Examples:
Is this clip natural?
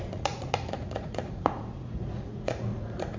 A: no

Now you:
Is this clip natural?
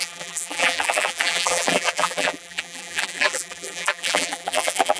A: no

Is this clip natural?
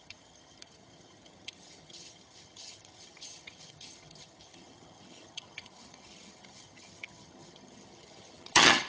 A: no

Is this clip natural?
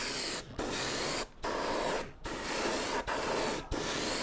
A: yes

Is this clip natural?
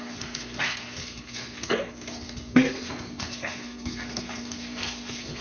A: no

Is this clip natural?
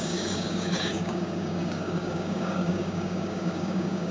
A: no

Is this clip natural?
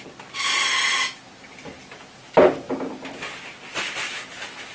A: yes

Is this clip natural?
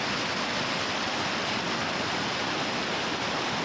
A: yes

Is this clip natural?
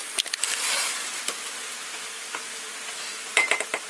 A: yes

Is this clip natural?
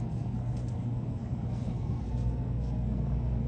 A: no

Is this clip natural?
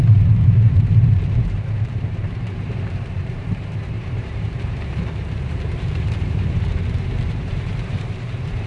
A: no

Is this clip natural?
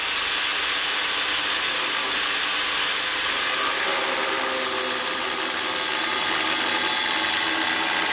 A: yes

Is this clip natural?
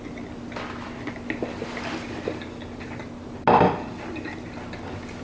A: yes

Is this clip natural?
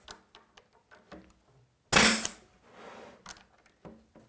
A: yes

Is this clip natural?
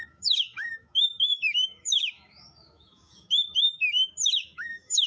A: no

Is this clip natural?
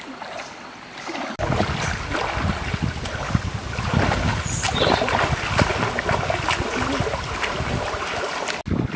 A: yes